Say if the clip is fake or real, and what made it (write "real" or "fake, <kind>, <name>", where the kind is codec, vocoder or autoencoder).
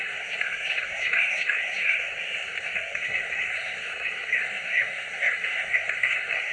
fake, codec, SNAC